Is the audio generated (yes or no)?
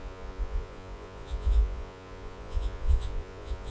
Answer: yes